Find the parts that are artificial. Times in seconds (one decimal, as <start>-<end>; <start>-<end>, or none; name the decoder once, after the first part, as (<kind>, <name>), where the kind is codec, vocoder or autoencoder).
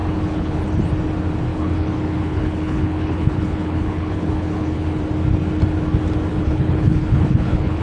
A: 0.0-0.6 (codec, HILCodec); 1.5-5.0; 6.3-7.8